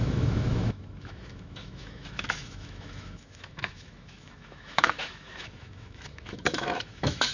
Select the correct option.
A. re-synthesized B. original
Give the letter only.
A